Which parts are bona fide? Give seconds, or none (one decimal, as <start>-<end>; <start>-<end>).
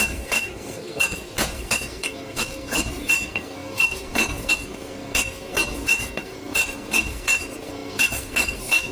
none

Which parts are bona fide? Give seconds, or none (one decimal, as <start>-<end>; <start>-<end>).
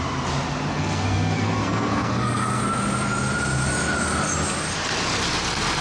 0.0-0.7; 2.6-5.8